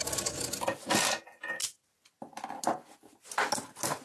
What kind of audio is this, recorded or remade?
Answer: recorded